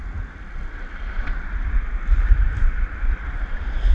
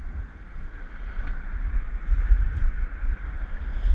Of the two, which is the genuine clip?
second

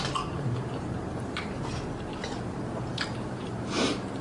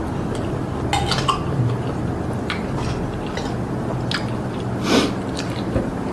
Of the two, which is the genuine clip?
second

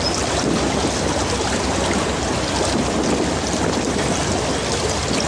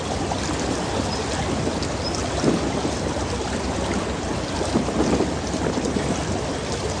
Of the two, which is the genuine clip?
first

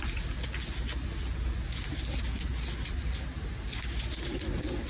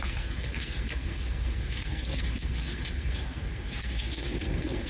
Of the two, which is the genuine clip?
first